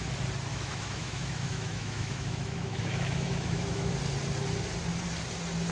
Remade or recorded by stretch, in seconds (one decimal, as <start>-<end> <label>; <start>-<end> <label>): 0.0-0.5 recorded; 0.5-3.9 remade; 3.9-5.7 recorded